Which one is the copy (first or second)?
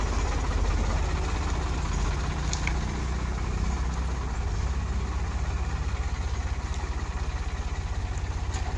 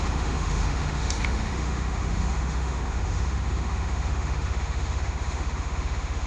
second